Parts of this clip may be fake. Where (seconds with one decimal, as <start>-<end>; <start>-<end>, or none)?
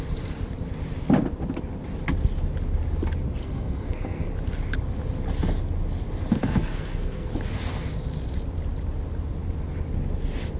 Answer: 3.4-4.3; 6.4-7.3